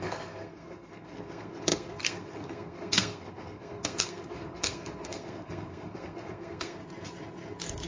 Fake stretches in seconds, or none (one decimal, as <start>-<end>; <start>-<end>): 0.0-6.8